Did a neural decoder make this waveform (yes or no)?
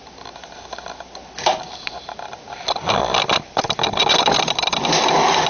no